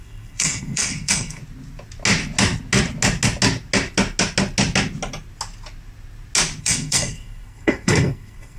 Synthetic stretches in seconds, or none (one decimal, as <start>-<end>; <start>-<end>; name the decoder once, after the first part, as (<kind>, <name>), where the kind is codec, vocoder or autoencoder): 0.0-1.4 (codec, SNAC); 6.6-8.6